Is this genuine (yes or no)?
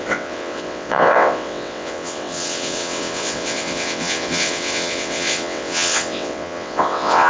no